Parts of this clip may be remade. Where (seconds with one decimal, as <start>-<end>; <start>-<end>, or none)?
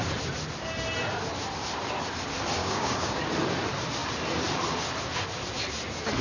2.6-3.2